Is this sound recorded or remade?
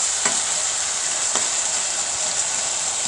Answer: recorded